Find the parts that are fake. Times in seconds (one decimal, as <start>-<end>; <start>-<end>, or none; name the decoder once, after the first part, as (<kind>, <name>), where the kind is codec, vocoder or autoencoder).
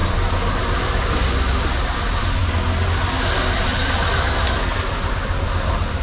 none